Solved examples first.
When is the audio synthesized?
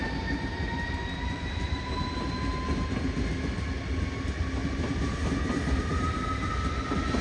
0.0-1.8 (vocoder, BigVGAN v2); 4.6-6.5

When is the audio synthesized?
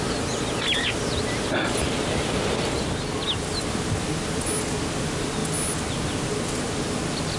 none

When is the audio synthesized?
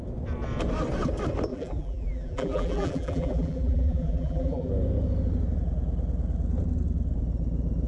1.5-4.7 (vocoder, BigVGAN v2)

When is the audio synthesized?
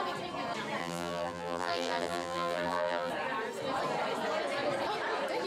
0.8-3.1 (vocoder, BigVGAN v2)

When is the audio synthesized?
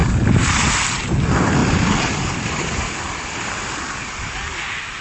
0.0-0.7 (vocoder, BigVGAN v2); 1.6-4.6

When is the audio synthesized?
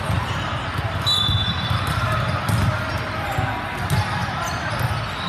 4.2-4.8 (vocoder, BigVGAN v2)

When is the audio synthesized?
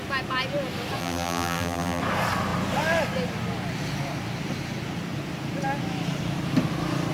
1.0-2.0 (vocoder, BigVGAN v2)